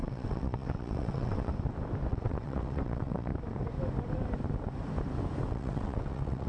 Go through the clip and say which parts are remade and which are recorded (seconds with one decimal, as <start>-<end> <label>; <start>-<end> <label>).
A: 0.0-1.5 remade; 1.5-2.1 recorded; 2.1-3.3 remade; 3.3-5.5 recorded; 5.5-6.5 remade